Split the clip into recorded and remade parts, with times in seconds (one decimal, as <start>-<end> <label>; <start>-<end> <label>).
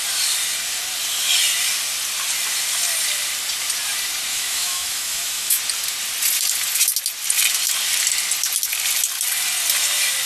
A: 0.0-4.3 recorded; 4.3-5.6 remade; 5.6-10.3 recorded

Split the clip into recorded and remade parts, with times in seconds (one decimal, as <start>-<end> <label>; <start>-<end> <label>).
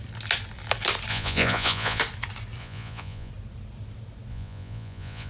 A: 0.0-1.1 recorded; 1.1-2.0 remade; 2.0-2.6 recorded; 2.6-3.3 remade; 3.3-4.3 recorded; 4.3-5.3 remade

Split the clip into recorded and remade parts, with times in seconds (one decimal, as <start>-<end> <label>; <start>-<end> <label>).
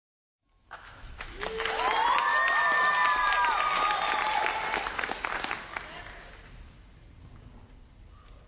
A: 0.0-1.8 remade; 1.8-8.5 recorded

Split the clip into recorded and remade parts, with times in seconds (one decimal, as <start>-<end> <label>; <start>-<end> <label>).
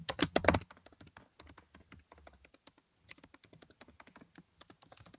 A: 0.0-5.2 recorded